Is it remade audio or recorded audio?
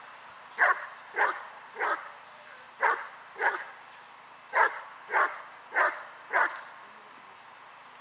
recorded